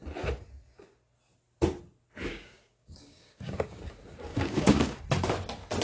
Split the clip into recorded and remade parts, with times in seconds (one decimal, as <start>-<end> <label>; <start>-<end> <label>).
0.0-2.3 recorded; 2.3-3.8 remade; 3.8-4.3 recorded; 4.3-5.0 remade; 5.0-5.8 recorded